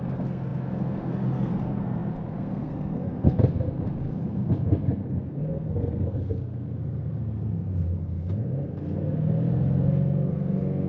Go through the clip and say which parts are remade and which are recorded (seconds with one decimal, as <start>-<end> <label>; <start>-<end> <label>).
0.0-10.9 remade